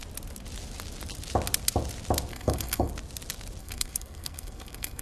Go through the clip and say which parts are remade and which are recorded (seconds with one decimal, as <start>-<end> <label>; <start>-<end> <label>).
0.0-2.3 recorded; 2.3-2.9 remade; 2.9-3.6 recorded; 3.6-5.0 remade